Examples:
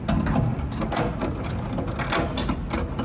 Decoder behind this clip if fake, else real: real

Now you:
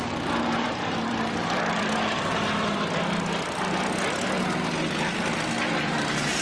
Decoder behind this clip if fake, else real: fake, vocoder, BigVGAN v2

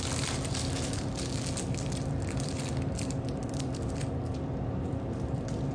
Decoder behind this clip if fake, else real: fake, vocoder, BigVGAN v2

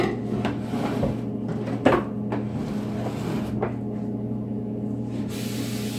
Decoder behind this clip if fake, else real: real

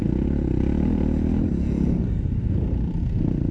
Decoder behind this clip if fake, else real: real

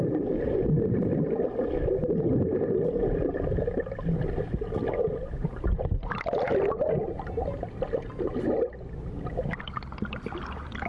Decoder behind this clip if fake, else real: real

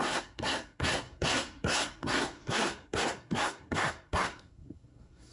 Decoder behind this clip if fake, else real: fake, codec, SNAC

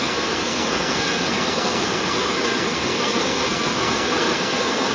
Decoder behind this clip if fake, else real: fake, codec, SNAC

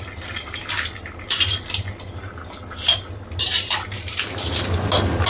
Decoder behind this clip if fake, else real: real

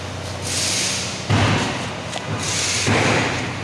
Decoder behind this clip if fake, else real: real